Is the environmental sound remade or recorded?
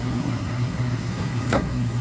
remade